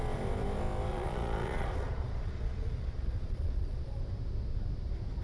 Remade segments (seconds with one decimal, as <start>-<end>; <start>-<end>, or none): 0.9-4.0